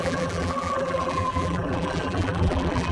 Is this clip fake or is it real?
fake